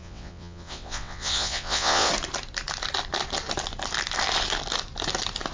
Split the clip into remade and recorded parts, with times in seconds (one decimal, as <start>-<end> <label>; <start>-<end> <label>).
0.0-2.1 remade; 2.1-5.5 recorded